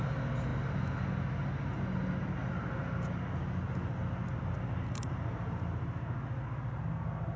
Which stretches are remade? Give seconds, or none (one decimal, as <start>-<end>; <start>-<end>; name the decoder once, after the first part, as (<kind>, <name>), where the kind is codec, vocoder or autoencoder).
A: none